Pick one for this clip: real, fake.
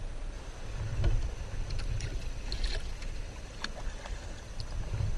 real